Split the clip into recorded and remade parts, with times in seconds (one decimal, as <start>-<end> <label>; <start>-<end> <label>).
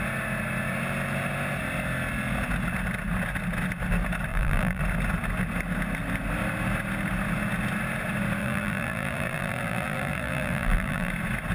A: 0.0-4.3 recorded; 4.3-4.8 remade; 4.8-8.4 recorded; 8.4-11.1 remade; 11.1-11.5 recorded